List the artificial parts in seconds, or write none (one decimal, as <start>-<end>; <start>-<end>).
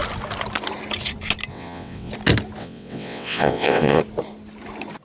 1.5-2.1; 2.6-4.0